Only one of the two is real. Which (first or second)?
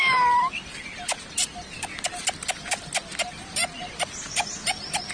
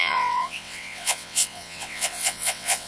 first